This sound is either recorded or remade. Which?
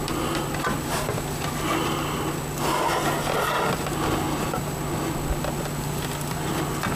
recorded